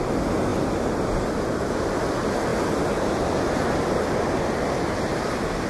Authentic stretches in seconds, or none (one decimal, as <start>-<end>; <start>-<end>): 0.0-5.7